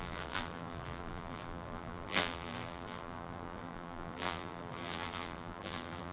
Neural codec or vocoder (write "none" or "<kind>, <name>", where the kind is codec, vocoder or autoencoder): vocoder, BigVGAN v2